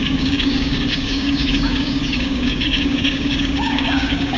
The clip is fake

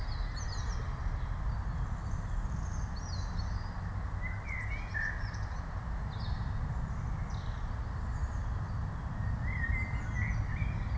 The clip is real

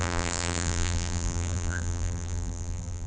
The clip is fake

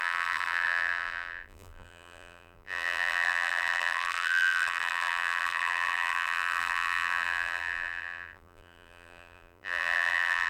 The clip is fake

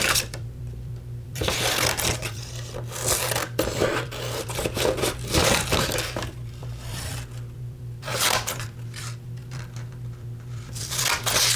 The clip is fake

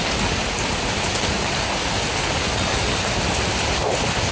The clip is real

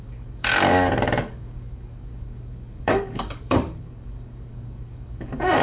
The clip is fake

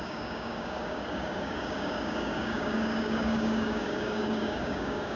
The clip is fake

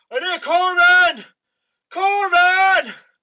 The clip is real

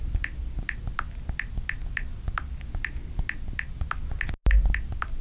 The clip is real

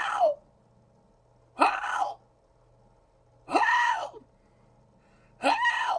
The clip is real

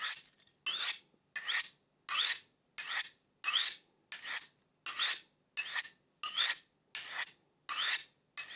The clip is real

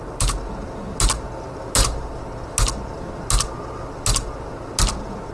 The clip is real